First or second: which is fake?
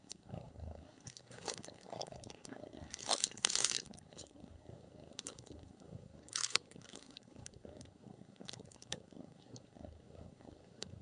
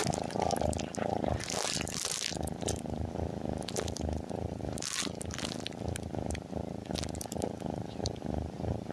first